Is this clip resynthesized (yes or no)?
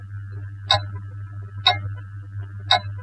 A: no